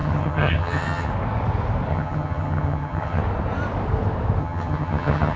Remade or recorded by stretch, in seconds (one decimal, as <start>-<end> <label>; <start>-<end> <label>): 0.0-1.1 remade; 1.1-1.9 recorded; 1.9-3.2 remade; 3.2-4.4 recorded; 4.4-5.4 remade

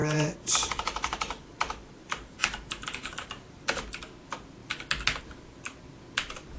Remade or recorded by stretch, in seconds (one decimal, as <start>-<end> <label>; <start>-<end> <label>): 0.0-4.0 remade; 4.0-6.6 recorded

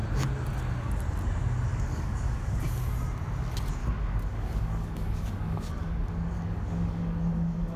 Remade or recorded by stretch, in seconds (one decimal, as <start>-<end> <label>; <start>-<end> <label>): 0.0-1.7 recorded; 1.7-2.7 remade; 2.7-3.8 recorded; 3.8-7.8 remade

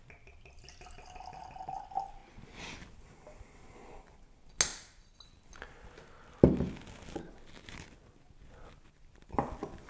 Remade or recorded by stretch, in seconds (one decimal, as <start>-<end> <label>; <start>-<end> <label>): 0.0-9.9 recorded

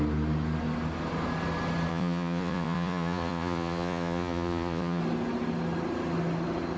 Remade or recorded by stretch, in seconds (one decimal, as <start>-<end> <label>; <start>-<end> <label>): 0.0-1.9 recorded; 1.9-5.0 remade; 5.0-6.8 recorded

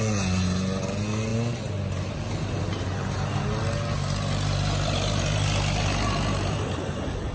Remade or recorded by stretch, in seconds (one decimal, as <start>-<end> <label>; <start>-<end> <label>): 0.0-7.3 recorded